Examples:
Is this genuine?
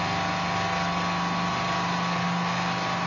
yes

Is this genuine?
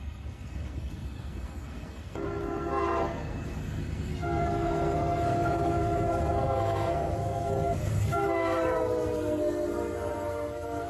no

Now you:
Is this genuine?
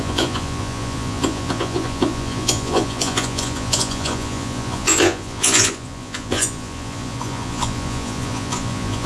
no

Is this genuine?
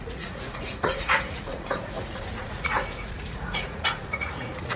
no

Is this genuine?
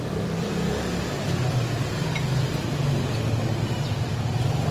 yes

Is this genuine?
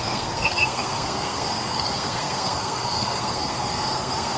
no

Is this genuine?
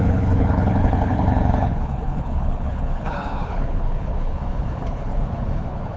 no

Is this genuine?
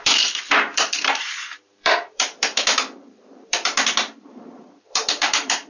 no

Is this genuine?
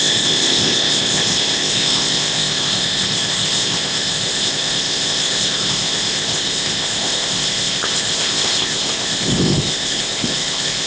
no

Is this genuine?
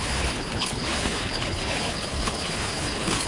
no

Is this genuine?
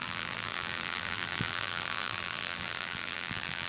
no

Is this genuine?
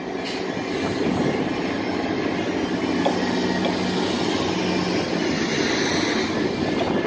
yes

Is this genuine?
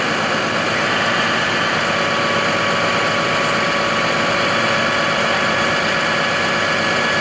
yes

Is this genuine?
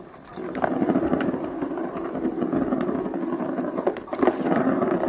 yes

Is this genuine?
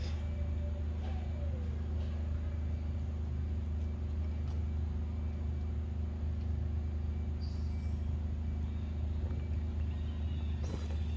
yes